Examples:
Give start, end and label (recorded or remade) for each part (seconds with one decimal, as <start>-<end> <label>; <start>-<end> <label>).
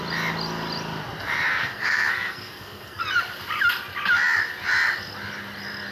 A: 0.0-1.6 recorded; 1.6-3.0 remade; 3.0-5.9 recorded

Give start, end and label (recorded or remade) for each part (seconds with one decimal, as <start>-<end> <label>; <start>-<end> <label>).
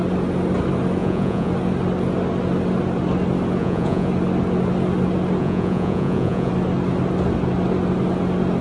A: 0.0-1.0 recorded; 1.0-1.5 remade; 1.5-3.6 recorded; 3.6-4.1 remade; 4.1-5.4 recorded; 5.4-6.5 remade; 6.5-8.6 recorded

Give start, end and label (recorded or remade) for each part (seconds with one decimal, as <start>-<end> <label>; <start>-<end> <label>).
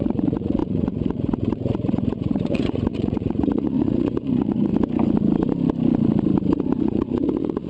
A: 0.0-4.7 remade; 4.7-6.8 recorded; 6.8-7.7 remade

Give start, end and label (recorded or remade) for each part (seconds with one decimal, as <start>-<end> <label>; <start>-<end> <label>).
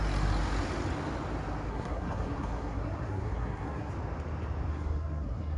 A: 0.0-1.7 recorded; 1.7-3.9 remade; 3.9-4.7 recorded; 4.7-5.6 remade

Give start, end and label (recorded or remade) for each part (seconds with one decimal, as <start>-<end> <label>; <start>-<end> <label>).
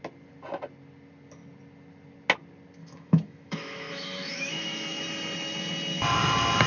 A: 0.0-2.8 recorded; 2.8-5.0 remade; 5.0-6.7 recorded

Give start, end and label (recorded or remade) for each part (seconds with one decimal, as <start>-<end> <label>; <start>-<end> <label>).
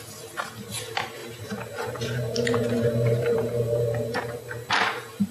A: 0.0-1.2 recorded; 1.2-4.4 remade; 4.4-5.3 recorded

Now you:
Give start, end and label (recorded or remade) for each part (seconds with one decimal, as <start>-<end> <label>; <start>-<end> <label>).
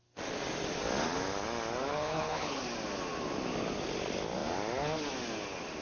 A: 0.0-1.9 recorded; 1.9-2.6 remade; 2.6-5.8 recorded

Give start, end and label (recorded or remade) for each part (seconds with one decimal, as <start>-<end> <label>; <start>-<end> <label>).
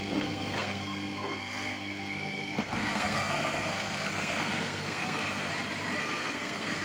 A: 0.0-5.5 remade; 5.5-6.0 recorded; 6.0-6.8 remade